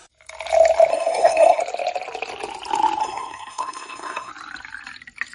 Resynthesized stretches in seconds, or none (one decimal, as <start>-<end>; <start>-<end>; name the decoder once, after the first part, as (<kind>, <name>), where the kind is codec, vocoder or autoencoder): 0.9-1.6 (codec, SNAC); 3.0-4.3